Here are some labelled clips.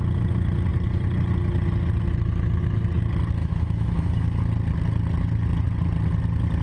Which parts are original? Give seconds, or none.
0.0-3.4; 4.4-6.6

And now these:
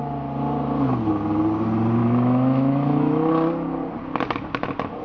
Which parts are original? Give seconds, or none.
0.0-2.0; 3.3-5.0

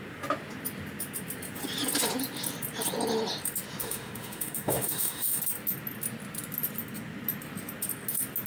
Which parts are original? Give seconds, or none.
0.0-3.8; 5.4-8.5

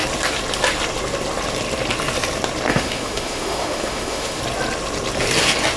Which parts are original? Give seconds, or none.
0.0-2.7; 4.4-5.8